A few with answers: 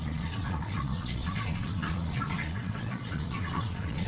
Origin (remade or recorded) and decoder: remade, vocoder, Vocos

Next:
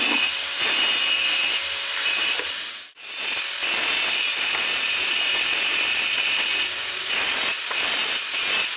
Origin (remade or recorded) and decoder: recorded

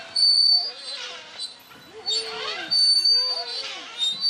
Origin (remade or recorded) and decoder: recorded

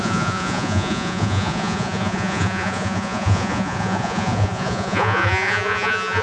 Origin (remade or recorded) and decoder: remade, vocoder, Vocos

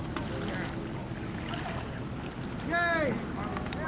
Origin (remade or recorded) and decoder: recorded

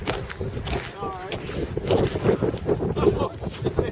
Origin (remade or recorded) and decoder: recorded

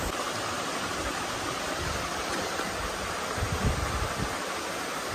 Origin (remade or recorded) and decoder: recorded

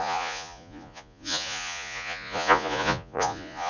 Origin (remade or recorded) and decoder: remade, vocoder, Vocos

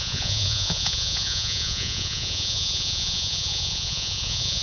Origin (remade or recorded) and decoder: remade, vocoder, Vocos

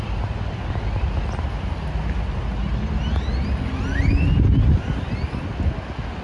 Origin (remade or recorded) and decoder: recorded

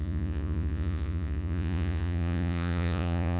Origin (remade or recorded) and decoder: remade, vocoder, Vocos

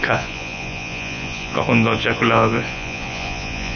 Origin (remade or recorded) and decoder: remade, vocoder, Vocos